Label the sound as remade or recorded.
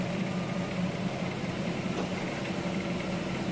remade